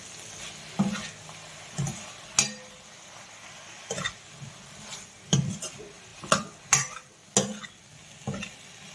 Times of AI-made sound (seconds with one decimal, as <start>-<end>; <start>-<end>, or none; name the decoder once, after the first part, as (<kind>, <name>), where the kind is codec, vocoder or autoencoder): none

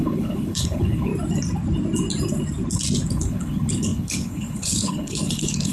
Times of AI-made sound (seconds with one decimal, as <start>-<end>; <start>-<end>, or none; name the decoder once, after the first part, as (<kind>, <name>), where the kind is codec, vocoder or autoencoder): 0.0-1.1 (codec, HILCodec); 3.1-5.7

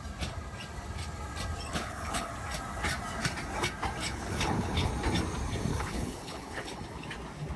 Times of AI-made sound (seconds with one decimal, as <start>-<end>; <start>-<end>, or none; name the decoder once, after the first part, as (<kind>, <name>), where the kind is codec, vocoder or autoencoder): 1.7-2.3 (codec, HILCodec); 4.0-4.9; 5.7-6.8

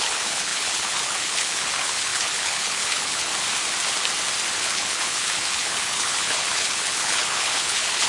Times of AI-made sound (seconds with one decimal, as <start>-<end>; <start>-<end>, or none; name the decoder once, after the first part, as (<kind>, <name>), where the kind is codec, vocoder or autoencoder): 0.0-3.3 (codec, HILCodec); 4.6-8.1

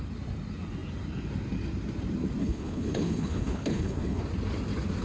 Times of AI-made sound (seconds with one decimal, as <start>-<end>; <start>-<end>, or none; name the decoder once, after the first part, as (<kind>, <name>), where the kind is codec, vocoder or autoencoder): 2.4-4.2 (codec, HILCodec)

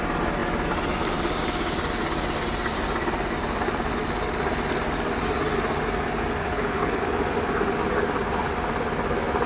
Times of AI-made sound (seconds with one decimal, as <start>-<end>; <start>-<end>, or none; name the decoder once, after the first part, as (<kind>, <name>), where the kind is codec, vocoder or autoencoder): 6.4-7.0 (codec, HILCodec)